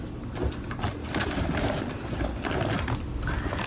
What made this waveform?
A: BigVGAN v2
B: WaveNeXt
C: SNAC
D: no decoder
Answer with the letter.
D